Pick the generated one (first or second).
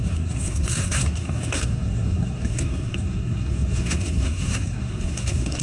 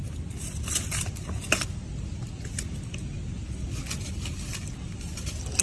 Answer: first